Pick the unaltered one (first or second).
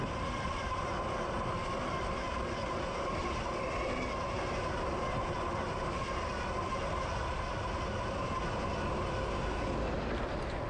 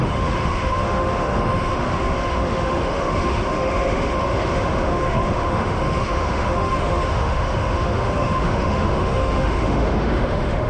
first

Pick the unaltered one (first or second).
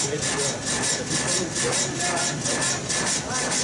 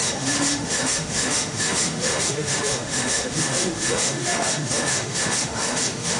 first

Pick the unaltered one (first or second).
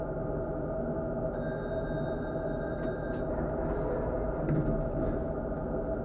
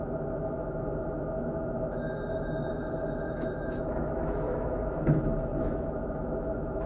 first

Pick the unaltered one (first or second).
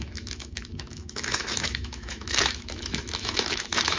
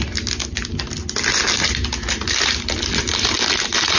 second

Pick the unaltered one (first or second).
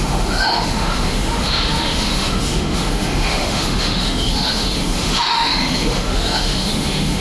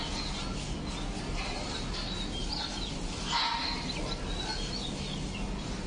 second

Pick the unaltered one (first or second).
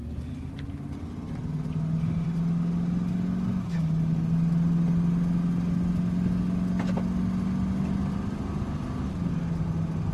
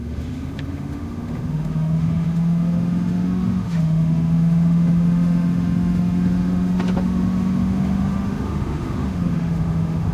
first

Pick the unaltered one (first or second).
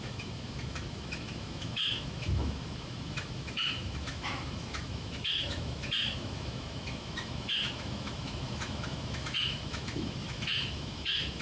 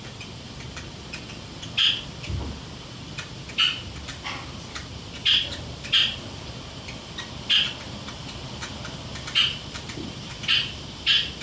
second